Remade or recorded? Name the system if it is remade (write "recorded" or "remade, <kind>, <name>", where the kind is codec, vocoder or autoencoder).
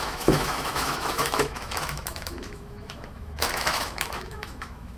remade, autoencoder, DAC-VAE